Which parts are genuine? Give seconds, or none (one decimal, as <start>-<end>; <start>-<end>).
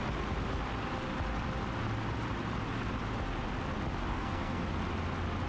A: 0.0-4.1; 4.6-5.5